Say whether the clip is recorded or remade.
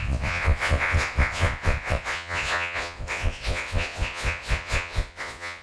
remade